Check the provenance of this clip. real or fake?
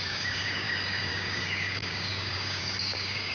fake